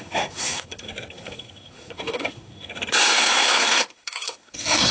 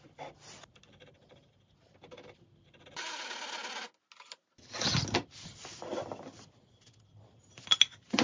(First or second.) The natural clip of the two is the second